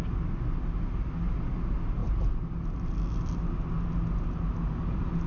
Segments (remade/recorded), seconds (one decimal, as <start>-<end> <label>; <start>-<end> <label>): 0.0-5.3 recorded